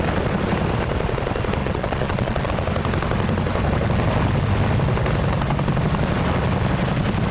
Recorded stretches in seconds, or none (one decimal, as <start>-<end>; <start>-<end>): 0.0-1.6; 2.5-7.3